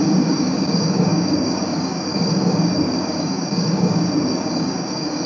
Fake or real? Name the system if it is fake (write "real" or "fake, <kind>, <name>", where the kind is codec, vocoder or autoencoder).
fake, codec, DAC